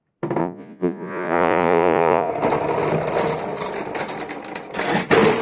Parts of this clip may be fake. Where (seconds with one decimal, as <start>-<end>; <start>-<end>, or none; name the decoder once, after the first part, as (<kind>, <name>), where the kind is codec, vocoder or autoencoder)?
0.4-2.3 (vocoder, Vocos)